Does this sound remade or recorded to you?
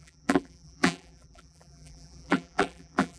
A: remade